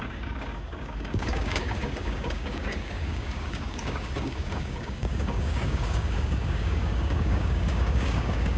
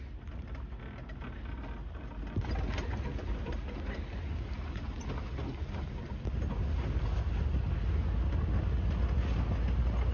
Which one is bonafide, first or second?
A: second